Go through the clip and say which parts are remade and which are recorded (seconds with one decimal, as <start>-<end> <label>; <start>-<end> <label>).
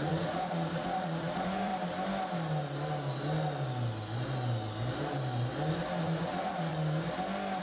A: 0.0-1.7 remade; 1.7-6.0 recorded; 6.0-6.7 remade; 6.7-7.6 recorded